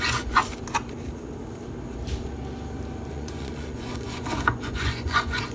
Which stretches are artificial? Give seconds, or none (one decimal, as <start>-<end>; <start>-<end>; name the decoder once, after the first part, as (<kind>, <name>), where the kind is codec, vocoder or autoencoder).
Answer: 0.0-0.4 (vocoder, Vocos); 3.1-5.5